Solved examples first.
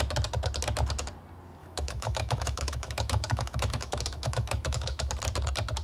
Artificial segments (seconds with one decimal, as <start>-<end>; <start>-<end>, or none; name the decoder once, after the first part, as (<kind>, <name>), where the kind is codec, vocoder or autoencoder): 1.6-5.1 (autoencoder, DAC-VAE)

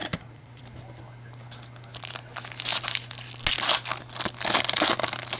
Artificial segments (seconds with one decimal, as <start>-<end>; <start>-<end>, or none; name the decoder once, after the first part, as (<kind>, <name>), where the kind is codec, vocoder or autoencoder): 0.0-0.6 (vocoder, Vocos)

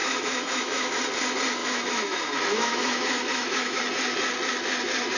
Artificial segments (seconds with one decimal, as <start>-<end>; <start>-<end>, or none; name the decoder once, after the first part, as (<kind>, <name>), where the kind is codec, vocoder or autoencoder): 0.0-1.0 (autoencoder, DAC-VAE); 1.6-3.8

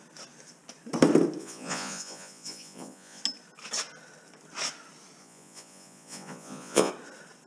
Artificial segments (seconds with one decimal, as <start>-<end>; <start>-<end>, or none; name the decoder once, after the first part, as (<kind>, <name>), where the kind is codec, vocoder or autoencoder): 1.4-3.2 (vocoder, Vocos); 5.2-6.9